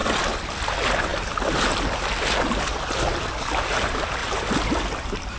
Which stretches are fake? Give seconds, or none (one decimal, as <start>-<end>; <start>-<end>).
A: none